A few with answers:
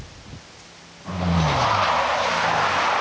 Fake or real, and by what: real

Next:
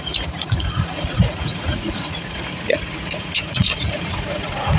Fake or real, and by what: fake, vocoder, Vocos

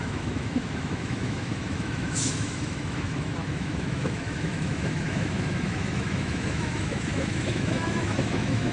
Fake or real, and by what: fake, autoencoder, DAC-VAE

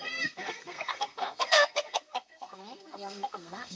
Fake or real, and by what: fake, codec, SNAC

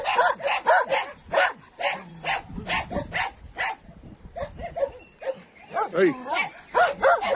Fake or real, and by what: real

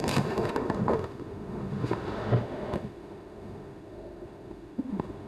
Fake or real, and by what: fake, autoencoder, DAC-VAE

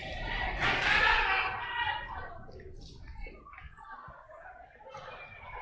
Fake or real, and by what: real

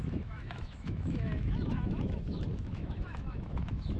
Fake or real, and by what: fake, autoencoder, DAC-VAE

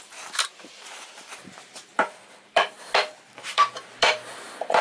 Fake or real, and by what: fake, vocoder, BigVGAN v2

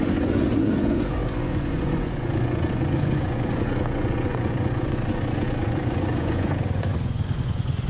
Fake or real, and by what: fake, vocoder, Vocos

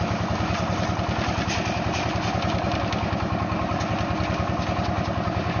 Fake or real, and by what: real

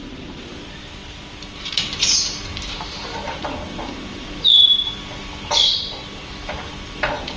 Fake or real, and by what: fake, vocoder, BigVGAN v2